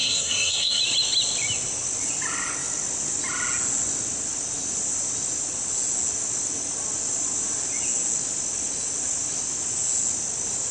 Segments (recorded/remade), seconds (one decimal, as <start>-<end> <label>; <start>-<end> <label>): 0.0-0.8 remade; 0.8-10.7 recorded